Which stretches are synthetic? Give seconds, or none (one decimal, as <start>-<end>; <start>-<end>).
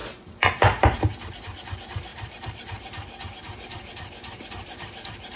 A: 0.0-1.0; 2.1-3.3